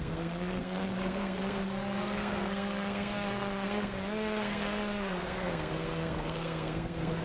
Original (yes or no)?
no